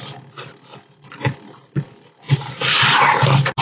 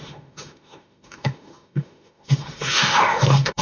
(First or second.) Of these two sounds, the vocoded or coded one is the second